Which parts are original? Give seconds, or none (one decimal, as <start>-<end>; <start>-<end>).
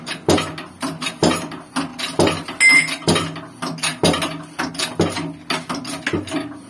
0.0-6.7